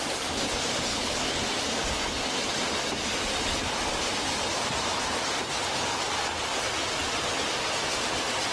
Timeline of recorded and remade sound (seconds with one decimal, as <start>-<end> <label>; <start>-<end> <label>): 0.0-0.9 recorded; 0.9-1.4 remade; 1.4-8.5 recorded